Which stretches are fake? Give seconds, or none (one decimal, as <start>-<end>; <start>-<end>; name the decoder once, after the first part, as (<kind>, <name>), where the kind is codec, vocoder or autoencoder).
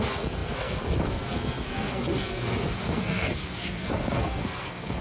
0.0-5.0 (codec, SNAC)